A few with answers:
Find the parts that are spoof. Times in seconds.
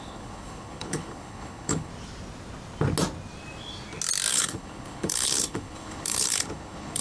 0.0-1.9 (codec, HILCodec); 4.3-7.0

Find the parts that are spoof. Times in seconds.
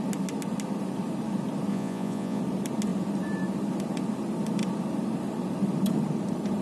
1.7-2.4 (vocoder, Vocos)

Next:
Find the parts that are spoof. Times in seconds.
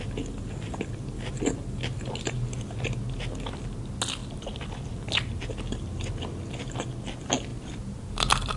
4.2-5.4 (vocoder, BigVGAN v2); 7.5-8.6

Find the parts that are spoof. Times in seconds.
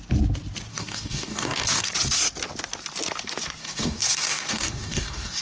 0.7-1.9 (codec, DAC); 3.6-5.4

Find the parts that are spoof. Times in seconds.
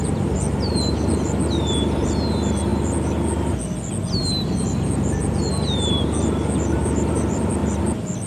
none